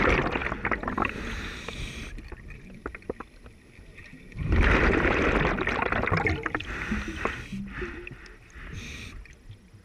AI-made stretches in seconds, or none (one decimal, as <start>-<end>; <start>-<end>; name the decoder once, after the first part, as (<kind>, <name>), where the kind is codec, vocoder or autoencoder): none